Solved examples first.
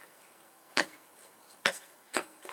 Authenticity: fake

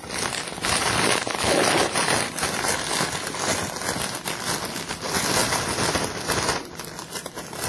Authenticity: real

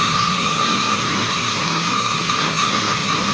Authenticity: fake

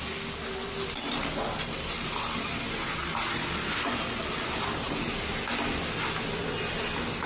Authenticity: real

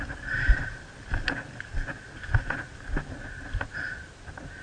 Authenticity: real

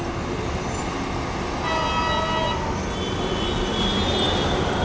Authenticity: real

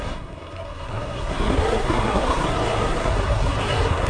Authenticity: fake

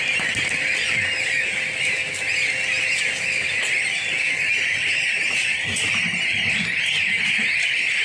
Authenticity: real